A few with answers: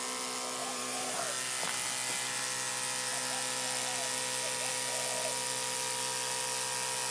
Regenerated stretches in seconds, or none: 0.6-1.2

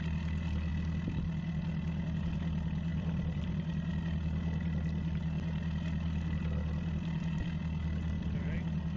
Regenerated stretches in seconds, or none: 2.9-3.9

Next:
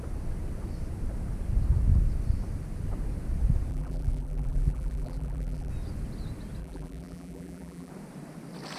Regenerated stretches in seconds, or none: 3.7-5.7; 6.6-7.9